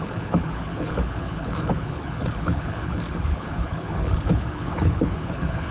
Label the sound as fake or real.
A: fake